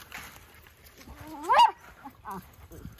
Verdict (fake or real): real